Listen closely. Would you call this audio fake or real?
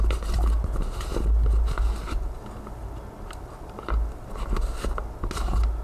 real